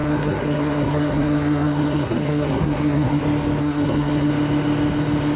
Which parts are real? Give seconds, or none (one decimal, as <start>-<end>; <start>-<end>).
3.2-3.6; 4.3-5.4